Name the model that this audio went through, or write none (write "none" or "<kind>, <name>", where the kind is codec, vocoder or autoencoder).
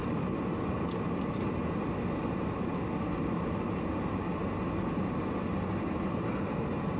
none